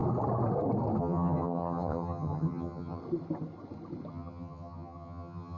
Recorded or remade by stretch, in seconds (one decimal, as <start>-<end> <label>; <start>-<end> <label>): 0.0-1.0 recorded; 1.0-3.0 remade; 3.0-4.1 recorded; 4.1-5.6 remade